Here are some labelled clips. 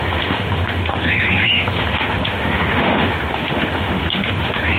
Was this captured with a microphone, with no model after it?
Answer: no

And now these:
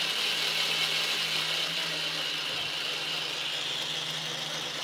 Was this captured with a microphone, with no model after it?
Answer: yes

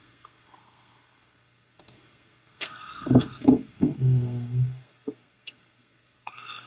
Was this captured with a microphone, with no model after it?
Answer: no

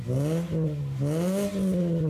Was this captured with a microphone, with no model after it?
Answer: yes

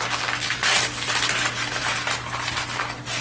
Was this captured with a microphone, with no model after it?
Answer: yes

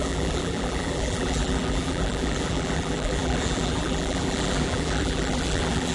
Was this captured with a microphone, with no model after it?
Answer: no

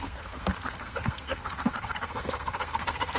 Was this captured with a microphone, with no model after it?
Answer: no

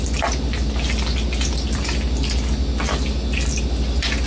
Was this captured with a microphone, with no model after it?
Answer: yes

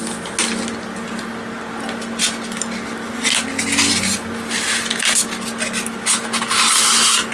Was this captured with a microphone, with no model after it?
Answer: yes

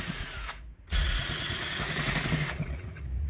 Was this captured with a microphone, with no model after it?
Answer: no